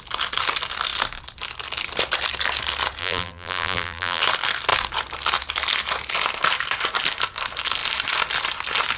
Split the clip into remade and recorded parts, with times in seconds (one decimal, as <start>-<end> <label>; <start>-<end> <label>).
0.0-3.0 recorded; 3.0-4.2 remade; 4.2-9.0 recorded